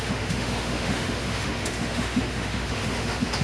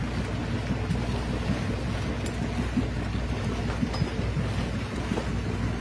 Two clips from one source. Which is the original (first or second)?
second